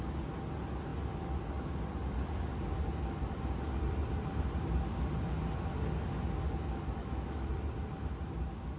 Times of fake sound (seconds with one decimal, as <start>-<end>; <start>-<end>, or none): 7.0-7.5